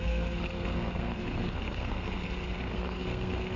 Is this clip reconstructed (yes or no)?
yes